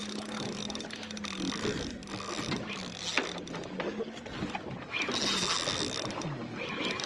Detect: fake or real real